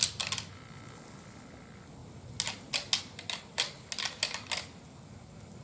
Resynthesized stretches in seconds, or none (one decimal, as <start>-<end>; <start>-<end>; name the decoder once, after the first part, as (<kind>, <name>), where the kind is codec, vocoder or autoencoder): none